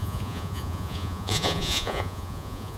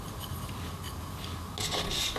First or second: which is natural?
second